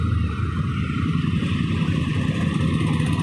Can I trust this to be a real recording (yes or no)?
yes